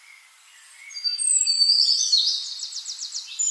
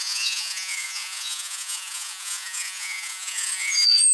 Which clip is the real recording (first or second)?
first